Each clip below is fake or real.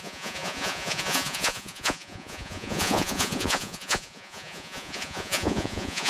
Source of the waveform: fake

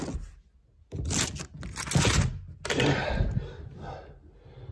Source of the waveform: real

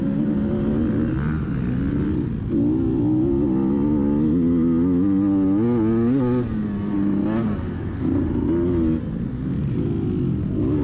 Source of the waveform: real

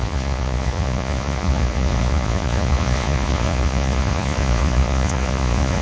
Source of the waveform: fake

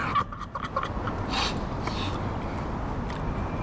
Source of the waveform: real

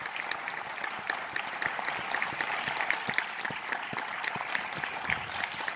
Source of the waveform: real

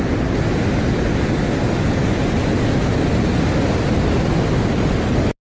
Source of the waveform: real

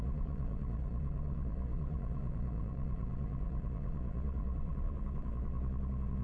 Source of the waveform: fake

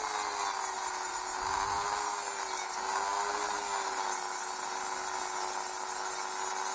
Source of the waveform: real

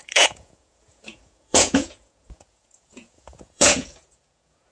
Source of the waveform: fake